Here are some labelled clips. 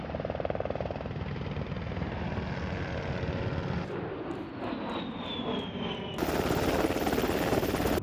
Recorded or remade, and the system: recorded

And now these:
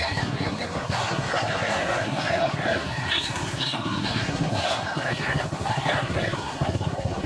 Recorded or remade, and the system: remade, codec, SNAC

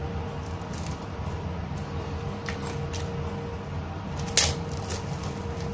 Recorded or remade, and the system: recorded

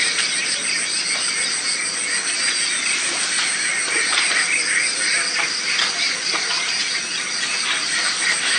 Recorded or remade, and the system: recorded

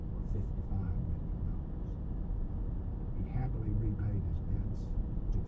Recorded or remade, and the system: recorded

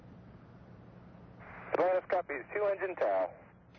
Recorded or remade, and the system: recorded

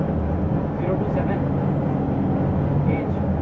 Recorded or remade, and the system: recorded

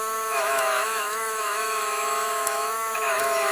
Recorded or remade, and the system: remade, autoencoder, DAC-VAE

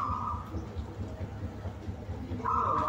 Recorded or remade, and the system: recorded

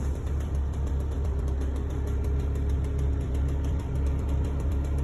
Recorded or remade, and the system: remade, vocoder, BigVGAN v2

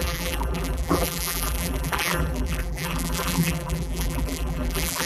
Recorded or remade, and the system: remade, vocoder, BigVGAN v2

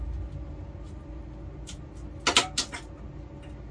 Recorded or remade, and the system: recorded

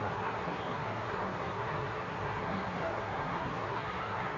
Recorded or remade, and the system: remade, codec, SNAC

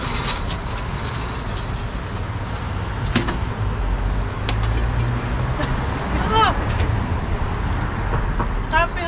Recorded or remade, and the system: recorded